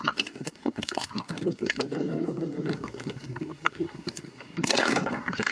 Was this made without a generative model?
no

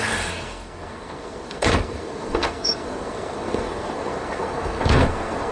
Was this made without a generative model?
no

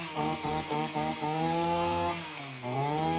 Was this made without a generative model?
no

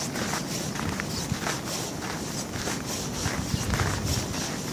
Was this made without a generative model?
yes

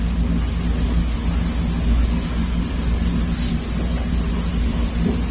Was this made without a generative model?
yes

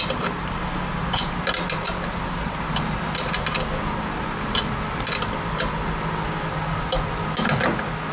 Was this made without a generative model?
yes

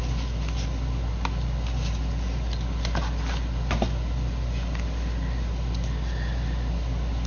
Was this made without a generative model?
yes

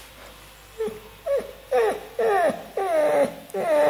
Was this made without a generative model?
yes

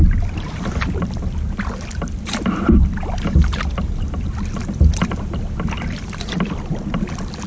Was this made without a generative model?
yes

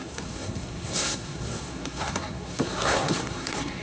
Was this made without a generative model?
no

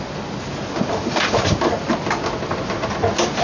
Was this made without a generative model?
yes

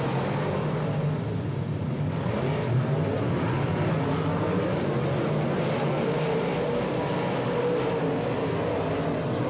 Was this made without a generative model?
yes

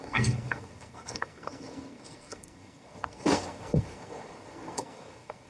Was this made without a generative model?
no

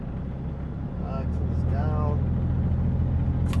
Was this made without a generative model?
yes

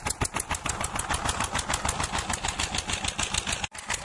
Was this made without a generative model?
yes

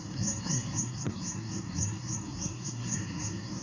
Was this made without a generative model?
no